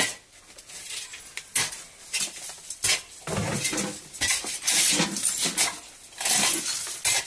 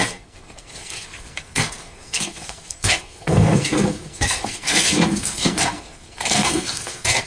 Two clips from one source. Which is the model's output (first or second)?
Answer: second